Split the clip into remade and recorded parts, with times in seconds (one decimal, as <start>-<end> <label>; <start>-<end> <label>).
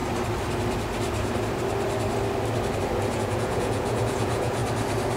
0.0-3.1 recorded; 3.1-4.6 remade; 4.6-5.2 recorded